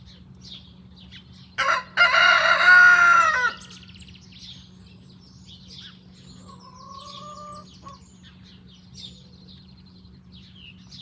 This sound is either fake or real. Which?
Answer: real